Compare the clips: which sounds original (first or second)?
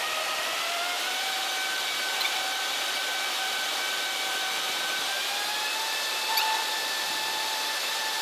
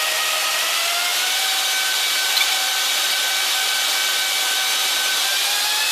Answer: second